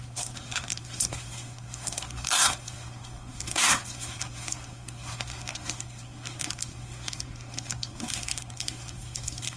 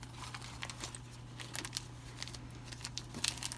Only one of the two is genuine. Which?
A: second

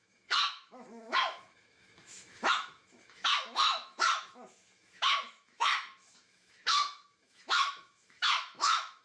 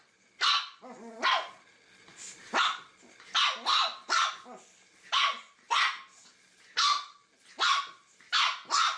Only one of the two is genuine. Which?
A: second